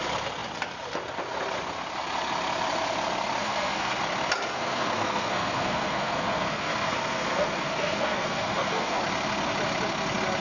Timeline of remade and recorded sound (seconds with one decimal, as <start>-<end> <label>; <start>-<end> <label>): 0.0-3.4 recorded; 3.4-4.0 remade; 4.0-4.5 recorded; 4.5-9.0 remade; 9.0-10.4 recorded